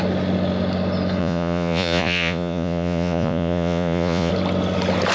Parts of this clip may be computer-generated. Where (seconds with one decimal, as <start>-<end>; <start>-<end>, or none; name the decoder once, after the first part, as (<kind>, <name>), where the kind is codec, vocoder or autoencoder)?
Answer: 1.2-4.3 (vocoder, Vocos)